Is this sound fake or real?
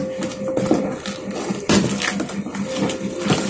real